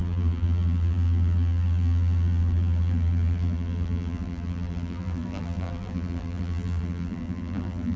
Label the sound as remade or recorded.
remade